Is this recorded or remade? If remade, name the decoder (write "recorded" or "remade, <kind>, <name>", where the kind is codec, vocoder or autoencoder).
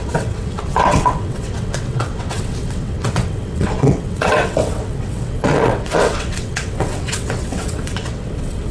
remade, vocoder, WaveNeXt